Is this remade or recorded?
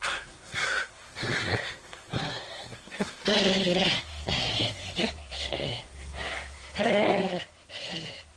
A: remade